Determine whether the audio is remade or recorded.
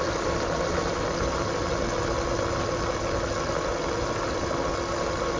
recorded